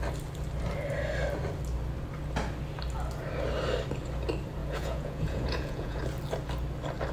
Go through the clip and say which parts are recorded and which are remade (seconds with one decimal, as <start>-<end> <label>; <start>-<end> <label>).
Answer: 0.0-4.6 recorded; 4.6-6.0 remade; 6.0-7.1 recorded